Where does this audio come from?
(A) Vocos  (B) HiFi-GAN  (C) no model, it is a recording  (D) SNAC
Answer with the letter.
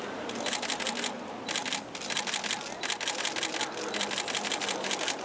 C